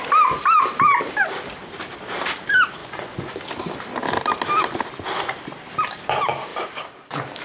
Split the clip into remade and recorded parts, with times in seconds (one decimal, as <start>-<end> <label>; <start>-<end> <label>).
0.0-2.8 recorded; 2.8-3.3 remade; 3.3-7.4 recorded